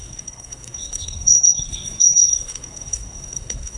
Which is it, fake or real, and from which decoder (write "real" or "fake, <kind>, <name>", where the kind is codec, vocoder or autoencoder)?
fake, codec, SNAC